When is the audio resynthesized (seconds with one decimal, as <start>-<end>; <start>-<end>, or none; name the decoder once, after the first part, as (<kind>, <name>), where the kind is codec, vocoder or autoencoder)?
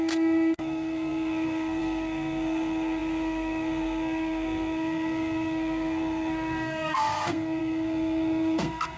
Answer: 0.0-9.0 (codec, SNAC)